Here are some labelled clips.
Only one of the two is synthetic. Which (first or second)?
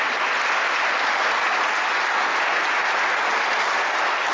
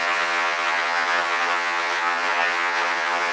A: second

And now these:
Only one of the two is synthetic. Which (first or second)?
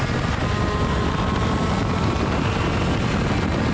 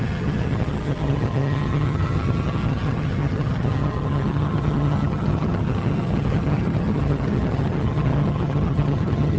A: second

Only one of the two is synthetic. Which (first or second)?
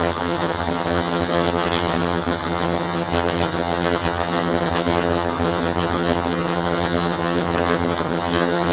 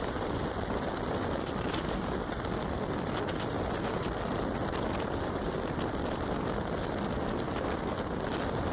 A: first